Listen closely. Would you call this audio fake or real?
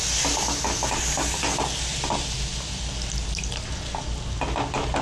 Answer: real